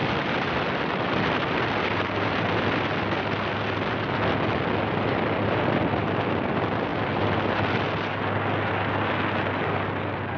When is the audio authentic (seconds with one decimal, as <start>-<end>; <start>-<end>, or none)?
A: 0.0-10.4